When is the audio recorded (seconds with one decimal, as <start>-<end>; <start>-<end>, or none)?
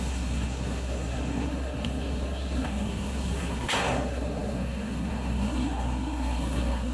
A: none